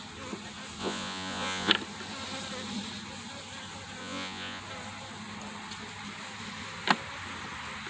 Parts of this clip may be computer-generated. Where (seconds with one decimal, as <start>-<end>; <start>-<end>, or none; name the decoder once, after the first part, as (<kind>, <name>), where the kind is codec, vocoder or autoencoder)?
0.8-1.7 (vocoder, Vocos); 4.0-4.6